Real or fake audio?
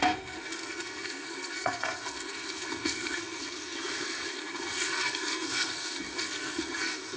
fake